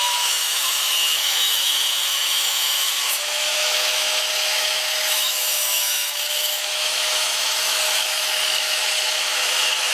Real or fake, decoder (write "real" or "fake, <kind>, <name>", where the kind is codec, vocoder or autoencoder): fake, autoencoder, DAC-VAE